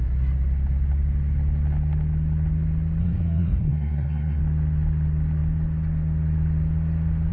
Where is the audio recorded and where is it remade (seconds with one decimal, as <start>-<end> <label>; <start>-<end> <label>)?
0.0-3.0 recorded; 3.0-4.4 remade; 4.4-7.3 recorded

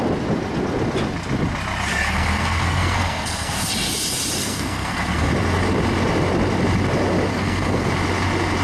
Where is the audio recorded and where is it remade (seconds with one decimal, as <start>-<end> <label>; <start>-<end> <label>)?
0.0-1.9 recorded; 1.9-3.5 remade; 3.5-4.4 recorded; 4.4-5.3 remade; 5.3-7.3 recorded; 7.3-7.9 remade; 7.9-8.6 recorded

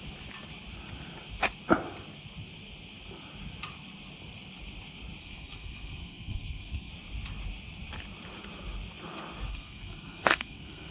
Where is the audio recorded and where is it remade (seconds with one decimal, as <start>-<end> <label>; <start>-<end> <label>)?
0.0-5.2 recorded; 5.2-6.9 remade; 6.9-9.5 recorded; 9.5-10.9 remade

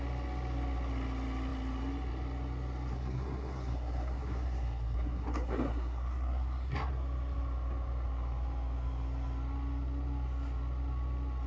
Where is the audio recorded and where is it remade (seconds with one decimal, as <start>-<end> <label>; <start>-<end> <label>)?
0.0-2.9 recorded; 2.9-6.9 remade; 6.9-11.5 recorded

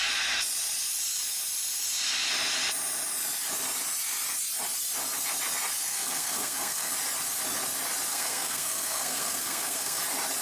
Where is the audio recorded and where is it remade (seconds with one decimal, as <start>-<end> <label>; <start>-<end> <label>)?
0.0-5.9 recorded; 5.9-6.9 remade; 6.9-8.1 recorded; 8.1-10.0 remade; 10.0-10.4 recorded